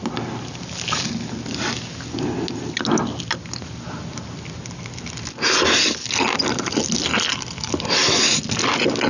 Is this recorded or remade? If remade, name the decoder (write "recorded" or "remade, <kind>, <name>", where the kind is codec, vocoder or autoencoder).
recorded